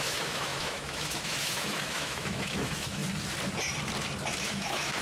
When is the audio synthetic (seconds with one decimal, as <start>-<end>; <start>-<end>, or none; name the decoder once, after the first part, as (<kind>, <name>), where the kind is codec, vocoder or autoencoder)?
0.0-3.0 (autoencoder, DAC-VAE); 4.4-5.0

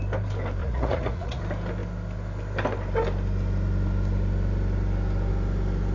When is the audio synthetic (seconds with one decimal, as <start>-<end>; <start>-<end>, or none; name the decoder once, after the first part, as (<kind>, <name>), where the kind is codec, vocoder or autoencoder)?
0.6-1.4 (vocoder, Vocos)

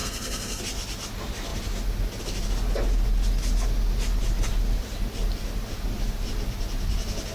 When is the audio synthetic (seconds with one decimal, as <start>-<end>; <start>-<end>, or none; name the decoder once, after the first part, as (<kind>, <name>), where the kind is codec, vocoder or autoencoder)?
0.0-0.6 (codec, SNAC)

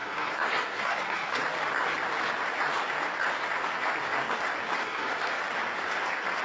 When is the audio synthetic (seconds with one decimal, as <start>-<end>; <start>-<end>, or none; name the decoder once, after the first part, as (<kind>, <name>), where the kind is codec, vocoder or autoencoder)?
0.0-1.4 (codec, SNAC); 4.8-5.4

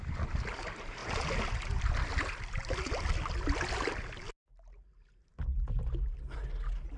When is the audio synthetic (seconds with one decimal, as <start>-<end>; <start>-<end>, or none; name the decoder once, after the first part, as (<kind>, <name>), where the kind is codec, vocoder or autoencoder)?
none

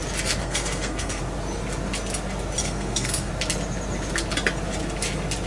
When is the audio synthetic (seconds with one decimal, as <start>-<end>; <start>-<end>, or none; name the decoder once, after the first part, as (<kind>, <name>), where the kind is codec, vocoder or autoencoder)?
0.4-1.2 (codec, SNAC); 2.6-3.3